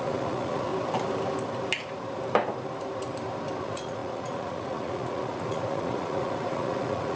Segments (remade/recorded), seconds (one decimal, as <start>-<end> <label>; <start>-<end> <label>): 0.0-0.7 remade; 0.7-3.6 recorded; 3.6-7.2 remade